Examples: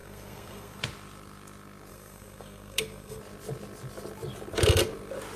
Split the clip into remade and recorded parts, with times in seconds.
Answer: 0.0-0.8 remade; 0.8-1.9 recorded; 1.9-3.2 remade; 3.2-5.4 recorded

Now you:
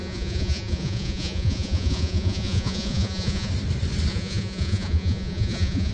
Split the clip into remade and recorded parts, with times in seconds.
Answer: 0.0-3.5 remade; 3.5-4.1 recorded; 4.1-5.9 remade

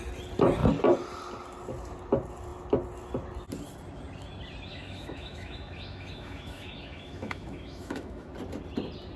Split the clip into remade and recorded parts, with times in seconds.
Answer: 0.0-4.7 recorded; 4.7-8.3 remade; 8.3-9.2 recorded

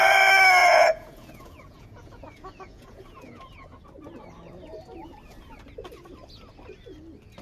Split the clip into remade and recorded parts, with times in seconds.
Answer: 0.0-0.6 recorded; 0.6-3.8 remade; 3.8-7.4 recorded